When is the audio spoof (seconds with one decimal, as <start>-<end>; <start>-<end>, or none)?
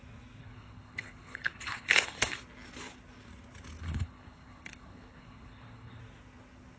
0.4-2.4; 3.8-6.0